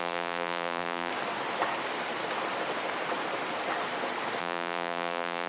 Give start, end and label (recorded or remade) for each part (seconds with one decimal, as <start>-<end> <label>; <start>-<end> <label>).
0.0-1.1 remade; 1.1-4.4 recorded; 4.4-5.5 remade